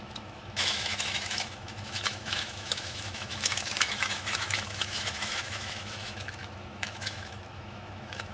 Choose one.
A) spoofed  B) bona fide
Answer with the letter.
A